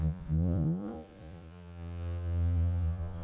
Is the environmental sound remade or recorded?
remade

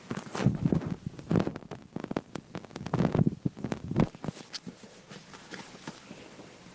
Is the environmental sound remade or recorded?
recorded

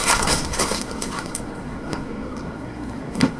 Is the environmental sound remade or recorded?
remade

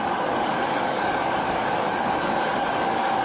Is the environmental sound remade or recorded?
remade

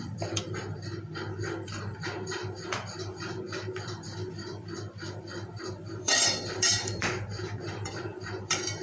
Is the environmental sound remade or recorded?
remade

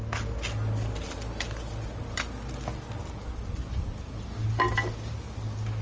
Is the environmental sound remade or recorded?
recorded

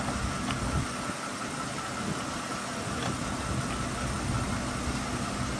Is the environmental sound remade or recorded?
recorded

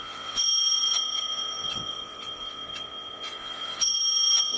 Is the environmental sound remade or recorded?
remade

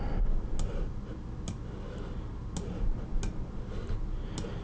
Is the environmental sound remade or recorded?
recorded